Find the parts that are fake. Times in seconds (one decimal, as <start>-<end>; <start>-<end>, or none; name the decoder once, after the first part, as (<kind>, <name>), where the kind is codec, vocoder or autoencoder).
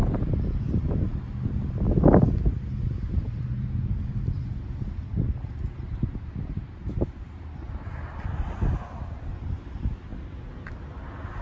none